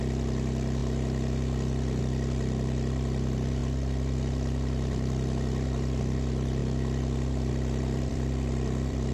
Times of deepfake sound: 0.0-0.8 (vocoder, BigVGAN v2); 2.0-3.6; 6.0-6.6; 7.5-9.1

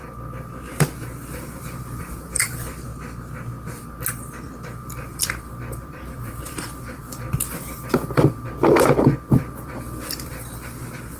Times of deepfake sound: 1.3-2.9 (vocoder, BigVGAN v2); 4.4-11.2

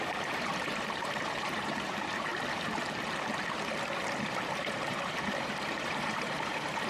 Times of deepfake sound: 0.0-2.3 (vocoder, BigVGAN v2); 4.6-6.9

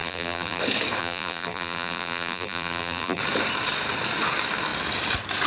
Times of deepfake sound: 0.0-0.6 (vocoder, BigVGAN v2); 1.0-3.2

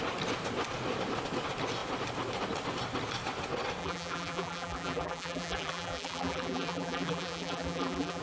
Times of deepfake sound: 3.8-8.2 (vocoder, BigVGAN v2)

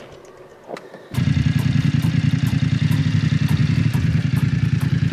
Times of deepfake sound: 0.5-3.0 (vocoder, BigVGAN v2); 3.6-4.3

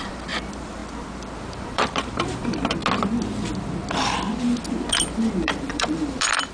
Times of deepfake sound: 0.0-0.8 (vocoder, BigVGAN v2); 1.4-2.8; 4.9-6.5